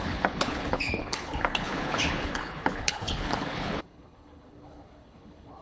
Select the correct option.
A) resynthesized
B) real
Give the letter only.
A